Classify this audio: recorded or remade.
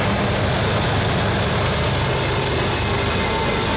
recorded